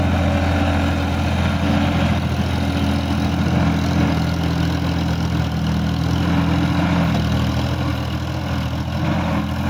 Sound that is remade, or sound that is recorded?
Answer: recorded